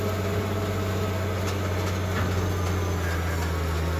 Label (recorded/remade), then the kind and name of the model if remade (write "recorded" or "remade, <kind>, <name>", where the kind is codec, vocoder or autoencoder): recorded